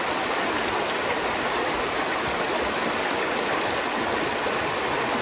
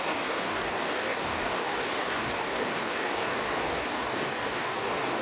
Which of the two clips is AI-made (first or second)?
second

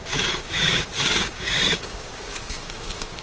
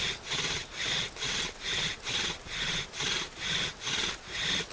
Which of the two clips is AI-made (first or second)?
first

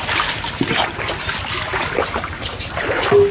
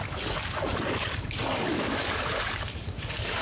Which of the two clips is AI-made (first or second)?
second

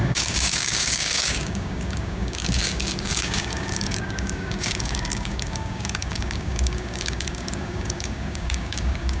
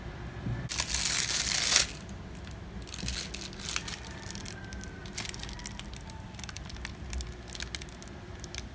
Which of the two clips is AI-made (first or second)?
first